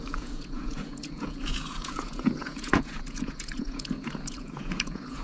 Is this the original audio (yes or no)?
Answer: no